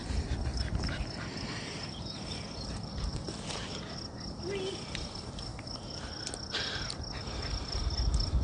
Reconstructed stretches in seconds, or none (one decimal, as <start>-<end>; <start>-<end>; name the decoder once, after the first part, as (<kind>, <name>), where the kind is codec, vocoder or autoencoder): 0.5-3.7 (vocoder, BigVGAN v2)